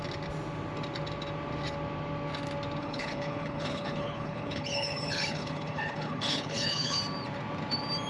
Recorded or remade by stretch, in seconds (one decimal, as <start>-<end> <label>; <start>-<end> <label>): 0.0-2.8 recorded; 2.8-7.0 remade; 7.0-8.1 recorded